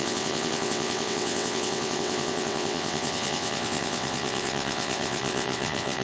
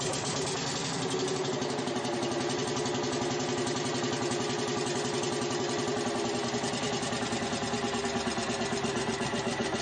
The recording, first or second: second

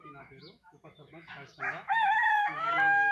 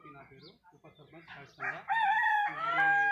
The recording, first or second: second